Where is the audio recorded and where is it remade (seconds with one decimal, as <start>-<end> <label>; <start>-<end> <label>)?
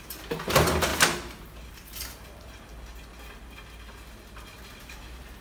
0.0-0.9 remade; 0.9-1.7 recorded; 1.7-2.7 remade; 2.7-4.8 recorded; 4.8-5.4 remade